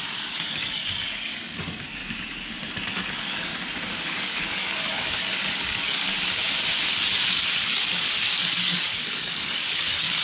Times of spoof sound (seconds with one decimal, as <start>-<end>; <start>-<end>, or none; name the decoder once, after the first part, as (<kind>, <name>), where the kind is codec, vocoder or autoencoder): 0.0-2.0 (codec, DAC); 2.9-3.5; 4.0-6.1; 7.0-10.2